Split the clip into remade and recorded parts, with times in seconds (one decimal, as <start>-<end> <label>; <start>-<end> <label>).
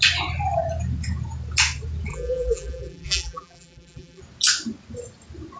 0.0-2.1 recorded; 2.1-4.2 remade; 4.2-5.6 recorded